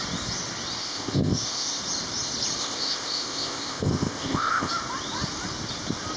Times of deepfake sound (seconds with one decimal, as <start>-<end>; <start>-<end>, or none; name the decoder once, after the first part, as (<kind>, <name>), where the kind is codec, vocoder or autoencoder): 0.8-1.8 (codec, ZipCodec); 2.6-4.7